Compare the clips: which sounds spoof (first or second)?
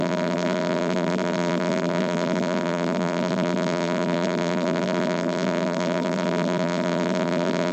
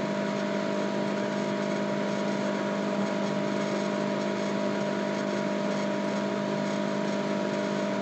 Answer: first